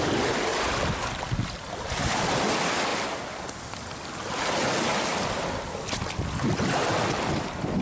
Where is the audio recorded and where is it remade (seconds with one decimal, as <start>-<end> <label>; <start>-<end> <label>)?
0.0-7.8 recorded